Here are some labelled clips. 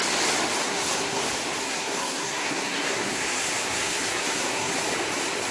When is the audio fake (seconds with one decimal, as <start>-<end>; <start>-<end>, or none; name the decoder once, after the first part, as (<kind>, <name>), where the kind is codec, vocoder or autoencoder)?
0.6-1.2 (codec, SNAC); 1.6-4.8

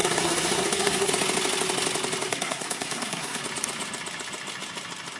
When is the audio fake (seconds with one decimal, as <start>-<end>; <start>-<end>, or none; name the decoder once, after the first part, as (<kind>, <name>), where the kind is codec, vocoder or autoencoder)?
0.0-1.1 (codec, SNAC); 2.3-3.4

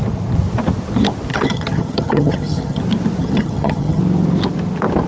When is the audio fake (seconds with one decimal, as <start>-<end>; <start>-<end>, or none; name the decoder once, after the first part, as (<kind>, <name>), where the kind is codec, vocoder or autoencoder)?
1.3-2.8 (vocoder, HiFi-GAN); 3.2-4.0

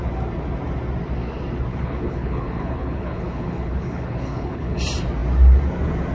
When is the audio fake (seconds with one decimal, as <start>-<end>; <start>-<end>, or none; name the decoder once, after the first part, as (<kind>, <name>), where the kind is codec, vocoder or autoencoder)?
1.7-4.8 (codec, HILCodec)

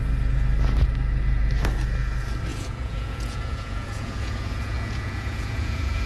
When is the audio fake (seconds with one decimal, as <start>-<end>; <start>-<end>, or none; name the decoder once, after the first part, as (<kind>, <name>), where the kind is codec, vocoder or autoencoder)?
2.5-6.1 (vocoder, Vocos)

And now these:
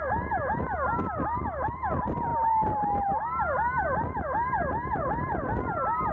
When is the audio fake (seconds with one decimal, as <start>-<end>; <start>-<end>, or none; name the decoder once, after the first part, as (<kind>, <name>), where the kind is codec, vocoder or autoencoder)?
none

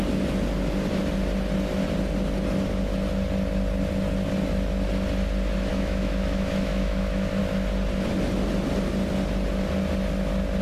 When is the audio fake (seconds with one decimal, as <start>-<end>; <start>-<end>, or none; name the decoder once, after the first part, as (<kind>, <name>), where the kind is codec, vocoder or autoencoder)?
5.7-7.4 (autoencoder, DAC-VAE)

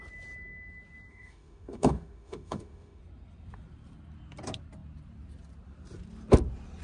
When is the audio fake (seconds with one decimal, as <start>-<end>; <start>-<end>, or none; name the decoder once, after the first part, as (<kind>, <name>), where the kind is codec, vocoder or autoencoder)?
1.1-3.0 (autoencoder, DAC-VAE)